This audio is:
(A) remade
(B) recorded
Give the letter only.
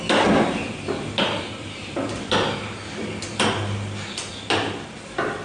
B